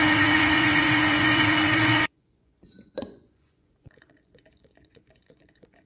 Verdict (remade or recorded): remade